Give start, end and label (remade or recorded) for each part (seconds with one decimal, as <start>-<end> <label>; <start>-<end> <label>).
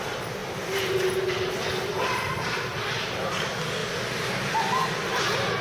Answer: 0.0-5.6 recorded